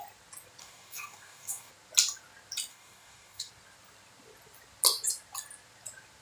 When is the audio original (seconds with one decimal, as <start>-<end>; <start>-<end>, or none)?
0.0-0.6; 1.7-2.7; 3.5-6.2